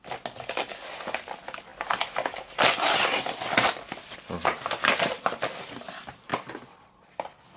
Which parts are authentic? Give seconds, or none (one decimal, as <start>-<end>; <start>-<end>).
0.0-7.6

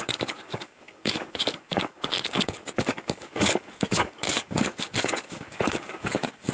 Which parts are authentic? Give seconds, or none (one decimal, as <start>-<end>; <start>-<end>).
none

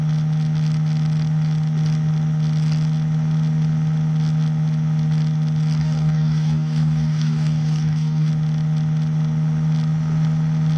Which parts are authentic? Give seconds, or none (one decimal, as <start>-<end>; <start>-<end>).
0.0-5.8; 8.3-10.8

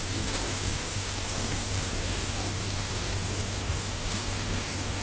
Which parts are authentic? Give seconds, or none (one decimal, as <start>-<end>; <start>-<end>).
none

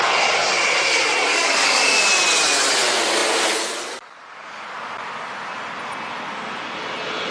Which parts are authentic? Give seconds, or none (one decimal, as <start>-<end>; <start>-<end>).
0.0-1.3; 2.0-7.3

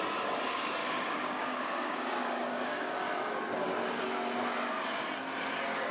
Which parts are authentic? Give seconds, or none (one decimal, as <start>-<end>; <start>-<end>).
0.0-0.8; 3.0-5.9